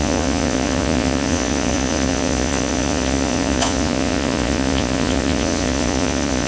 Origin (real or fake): fake